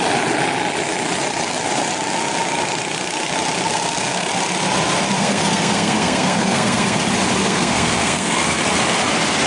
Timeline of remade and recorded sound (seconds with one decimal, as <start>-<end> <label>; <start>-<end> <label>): 0.0-3.7 recorded; 3.7-4.3 remade; 4.3-5.2 recorded; 5.2-7.0 remade; 7.0-7.4 recorded; 7.4-8.6 remade; 8.6-9.5 recorded

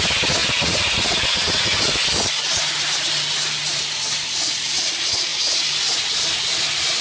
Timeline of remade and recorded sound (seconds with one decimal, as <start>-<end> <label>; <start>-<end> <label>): 0.0-0.4 recorded; 0.4-1.8 remade; 1.8-7.0 recorded

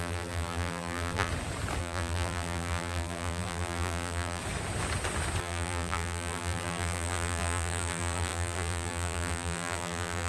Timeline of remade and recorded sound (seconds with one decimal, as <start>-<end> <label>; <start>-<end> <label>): 0.0-1.3 remade; 1.3-1.8 recorded; 1.8-4.4 remade; 4.4-5.4 recorded; 5.4-10.3 remade

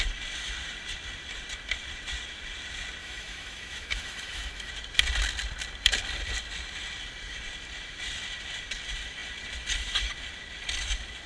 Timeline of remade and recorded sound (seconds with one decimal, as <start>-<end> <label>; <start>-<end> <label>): 0.0-3.0 recorded; 3.0-4.7 remade; 4.7-11.3 recorded

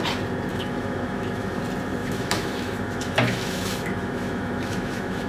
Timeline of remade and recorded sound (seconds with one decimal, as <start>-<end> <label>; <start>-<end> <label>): 0.0-0.5 recorded; 0.5-1.6 remade; 1.6-2.0 recorded; 2.0-5.3 remade